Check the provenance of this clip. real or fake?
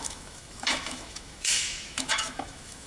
fake